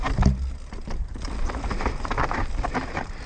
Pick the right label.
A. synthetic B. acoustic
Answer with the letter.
B